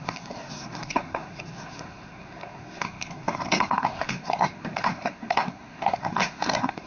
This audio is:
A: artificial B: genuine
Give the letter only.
A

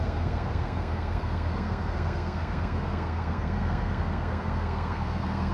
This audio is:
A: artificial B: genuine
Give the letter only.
A